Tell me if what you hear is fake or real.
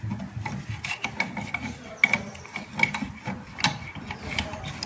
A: real